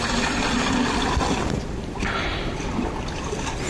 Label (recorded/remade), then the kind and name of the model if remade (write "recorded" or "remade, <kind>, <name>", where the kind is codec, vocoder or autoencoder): recorded